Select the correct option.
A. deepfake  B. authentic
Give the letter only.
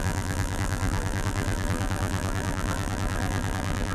A